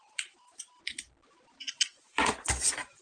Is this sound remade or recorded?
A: remade